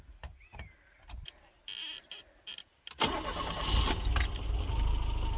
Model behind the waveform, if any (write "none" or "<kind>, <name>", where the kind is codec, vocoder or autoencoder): none